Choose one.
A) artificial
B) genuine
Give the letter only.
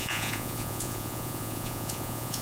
A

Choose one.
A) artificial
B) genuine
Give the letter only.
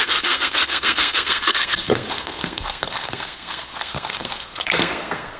A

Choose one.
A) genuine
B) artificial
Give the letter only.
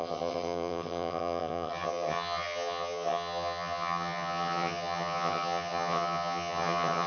B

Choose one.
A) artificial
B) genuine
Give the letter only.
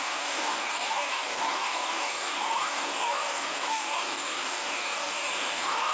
A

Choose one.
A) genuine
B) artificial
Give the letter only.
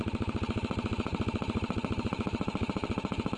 B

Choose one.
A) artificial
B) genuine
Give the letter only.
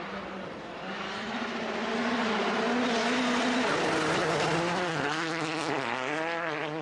B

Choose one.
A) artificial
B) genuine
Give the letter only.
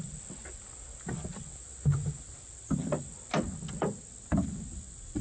B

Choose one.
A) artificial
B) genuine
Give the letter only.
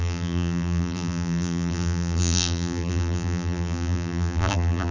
A